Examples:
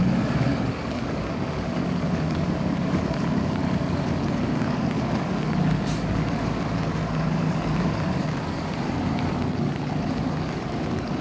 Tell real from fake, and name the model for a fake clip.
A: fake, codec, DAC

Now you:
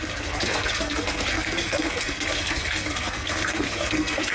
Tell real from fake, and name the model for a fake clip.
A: fake, codec, SNAC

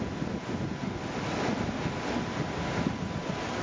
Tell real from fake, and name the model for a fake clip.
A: real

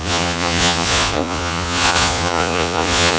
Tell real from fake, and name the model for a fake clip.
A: fake, vocoder, Vocos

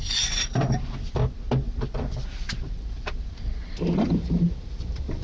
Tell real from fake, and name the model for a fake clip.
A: real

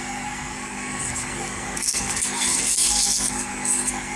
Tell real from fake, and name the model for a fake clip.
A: fake, codec, SNAC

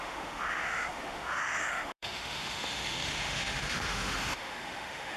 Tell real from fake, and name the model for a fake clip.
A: fake, autoencoder, DAC-VAE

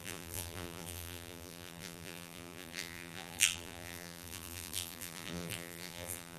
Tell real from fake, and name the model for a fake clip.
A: fake, vocoder, BigVGAN v2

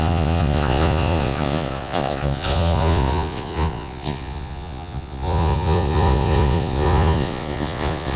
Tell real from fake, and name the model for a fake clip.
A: fake, vocoder, Vocos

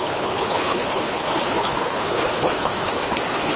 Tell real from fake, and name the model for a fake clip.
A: fake, codec, HILCodec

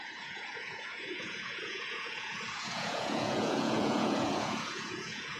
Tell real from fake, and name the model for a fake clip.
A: fake, vocoder, Vocos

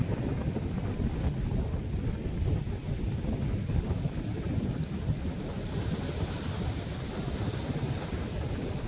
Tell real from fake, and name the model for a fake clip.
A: real